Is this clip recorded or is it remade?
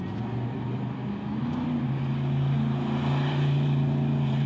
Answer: recorded